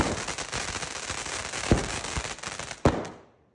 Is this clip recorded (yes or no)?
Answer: yes